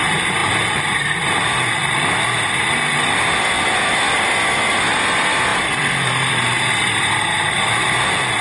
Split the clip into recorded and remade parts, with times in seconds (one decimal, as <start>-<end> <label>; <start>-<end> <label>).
0.0-5.5 recorded; 5.5-7.9 remade; 7.9-8.4 recorded